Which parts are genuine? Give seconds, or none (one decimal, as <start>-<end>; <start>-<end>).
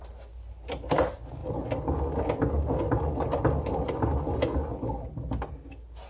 0.0-6.1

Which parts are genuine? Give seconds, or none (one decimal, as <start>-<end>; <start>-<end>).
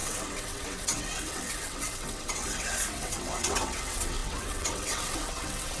none